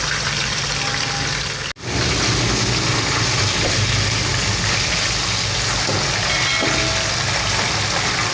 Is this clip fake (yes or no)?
no